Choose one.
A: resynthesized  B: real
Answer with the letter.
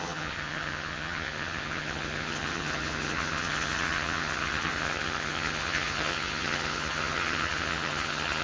A